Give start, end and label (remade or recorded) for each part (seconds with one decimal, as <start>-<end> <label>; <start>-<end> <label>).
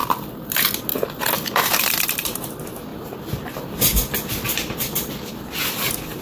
0.0-0.5 remade; 0.5-0.9 recorded; 0.9-2.5 remade; 2.5-2.9 recorded; 2.9-5.3 remade; 5.3-6.2 recorded